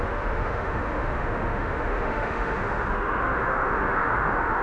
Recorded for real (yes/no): no